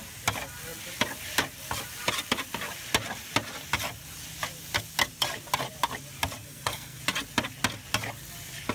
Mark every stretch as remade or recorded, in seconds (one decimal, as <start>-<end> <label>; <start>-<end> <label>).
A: 0.0-6.4 recorded; 6.4-7.0 remade; 7.0-8.7 recorded